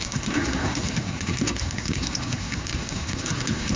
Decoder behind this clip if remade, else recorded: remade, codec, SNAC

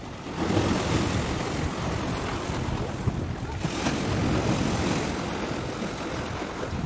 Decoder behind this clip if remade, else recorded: recorded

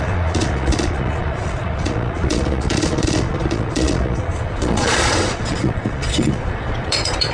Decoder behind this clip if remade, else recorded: remade, vocoder, Vocos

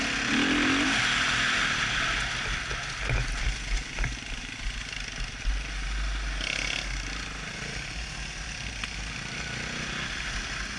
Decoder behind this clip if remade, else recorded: recorded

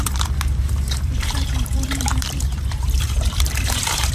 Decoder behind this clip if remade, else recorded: remade, vocoder, BigVGAN v2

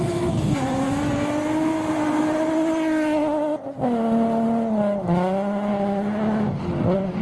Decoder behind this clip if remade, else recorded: recorded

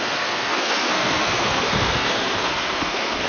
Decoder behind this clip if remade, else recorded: remade, codec, SNAC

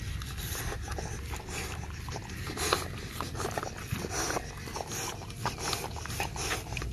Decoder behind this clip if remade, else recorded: recorded